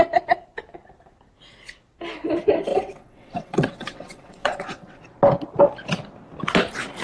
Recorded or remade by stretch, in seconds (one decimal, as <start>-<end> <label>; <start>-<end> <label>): 0.0-2.7 recorded; 2.7-5.0 remade; 5.0-7.0 recorded